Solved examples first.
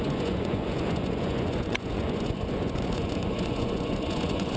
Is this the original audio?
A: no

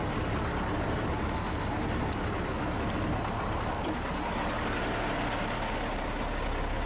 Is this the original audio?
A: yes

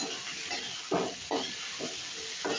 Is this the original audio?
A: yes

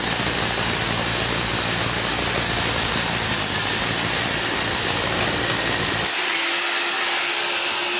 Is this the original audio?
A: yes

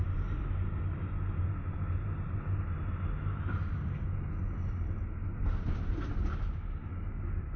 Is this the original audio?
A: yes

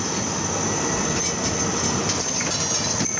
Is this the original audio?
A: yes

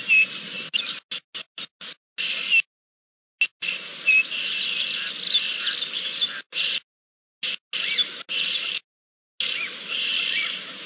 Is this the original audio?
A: yes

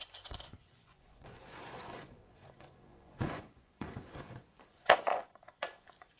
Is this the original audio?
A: no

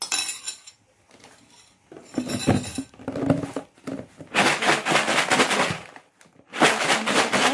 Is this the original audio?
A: yes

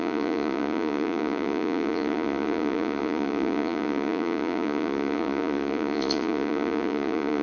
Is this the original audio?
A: no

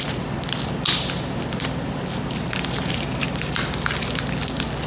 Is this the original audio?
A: yes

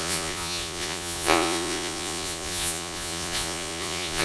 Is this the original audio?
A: no